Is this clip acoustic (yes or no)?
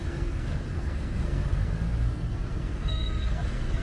no